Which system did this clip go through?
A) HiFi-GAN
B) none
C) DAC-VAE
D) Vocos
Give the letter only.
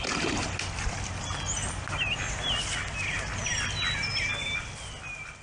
B